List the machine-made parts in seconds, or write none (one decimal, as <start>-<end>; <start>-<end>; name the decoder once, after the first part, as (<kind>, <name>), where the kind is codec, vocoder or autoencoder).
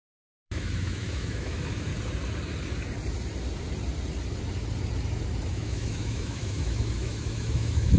0.0-1.9 (autoencoder, DAC-VAE); 5.5-8.0